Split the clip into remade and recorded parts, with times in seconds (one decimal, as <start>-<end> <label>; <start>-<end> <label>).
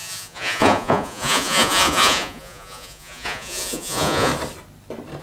0.0-4.3 remade; 4.3-5.2 recorded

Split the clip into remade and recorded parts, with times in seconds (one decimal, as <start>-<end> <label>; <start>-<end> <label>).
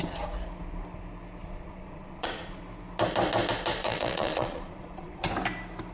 0.0-1.4 recorded; 1.4-2.6 remade; 2.6-3.8 recorded; 3.8-5.3 remade; 5.3-5.9 recorded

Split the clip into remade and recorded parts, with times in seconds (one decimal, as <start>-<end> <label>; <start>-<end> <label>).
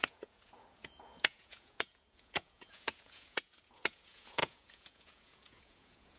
0.0-6.2 remade